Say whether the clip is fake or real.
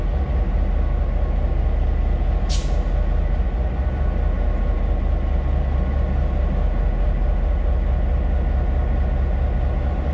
real